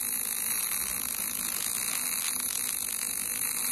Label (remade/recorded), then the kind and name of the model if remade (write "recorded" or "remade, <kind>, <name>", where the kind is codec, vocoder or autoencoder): recorded